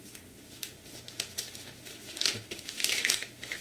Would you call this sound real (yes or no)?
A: no